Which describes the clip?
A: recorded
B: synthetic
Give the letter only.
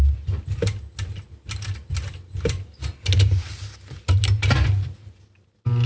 A